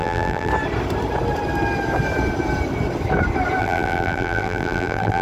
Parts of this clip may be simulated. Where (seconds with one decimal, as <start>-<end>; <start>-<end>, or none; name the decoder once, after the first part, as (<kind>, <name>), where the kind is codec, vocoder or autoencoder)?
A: 0.0-0.5 (vocoder, BigVGAN v2); 3.6-5.2